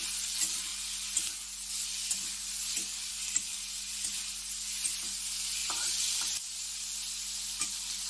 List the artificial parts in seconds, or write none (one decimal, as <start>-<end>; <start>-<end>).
3.5-4.1; 5.6-6.5